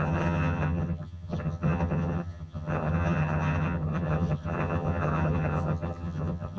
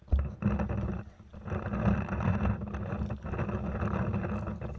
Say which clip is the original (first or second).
second